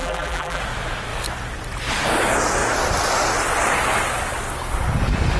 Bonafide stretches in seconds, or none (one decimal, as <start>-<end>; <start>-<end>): 0.6-5.4

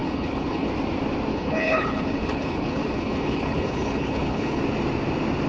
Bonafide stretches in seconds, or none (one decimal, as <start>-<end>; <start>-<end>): 0.7-1.3; 4.6-5.5

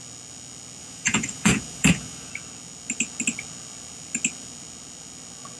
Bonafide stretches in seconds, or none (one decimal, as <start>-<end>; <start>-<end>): 0.0-0.8; 2.3-5.6

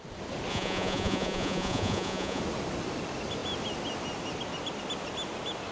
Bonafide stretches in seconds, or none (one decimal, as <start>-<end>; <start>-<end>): 0.0-0.5; 2.4-5.7

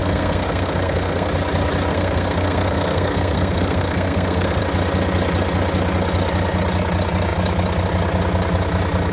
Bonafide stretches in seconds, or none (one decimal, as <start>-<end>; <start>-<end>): 1.3-1.9; 4.6-9.1

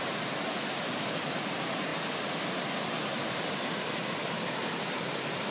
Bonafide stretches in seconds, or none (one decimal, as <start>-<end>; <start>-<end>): 0.0-5.5